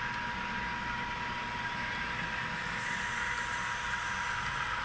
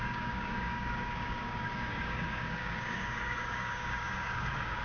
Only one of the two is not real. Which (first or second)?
second